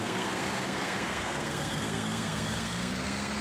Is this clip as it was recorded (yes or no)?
no